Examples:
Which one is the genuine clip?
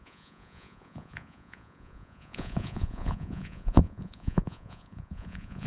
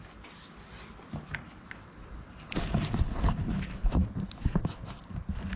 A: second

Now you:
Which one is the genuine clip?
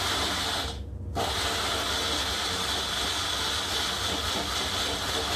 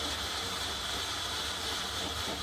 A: first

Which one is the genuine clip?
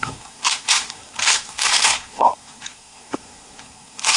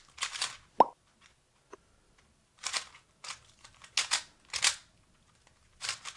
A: second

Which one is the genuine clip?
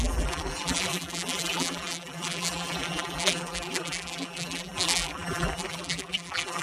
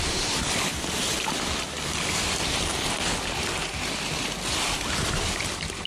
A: second